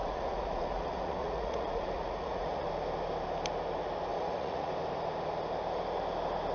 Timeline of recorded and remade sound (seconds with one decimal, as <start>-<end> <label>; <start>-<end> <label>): 0.0-2.7 remade; 2.7-4.1 recorded; 4.1-4.7 remade; 4.7-6.5 recorded